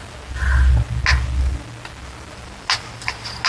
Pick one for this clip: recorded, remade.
recorded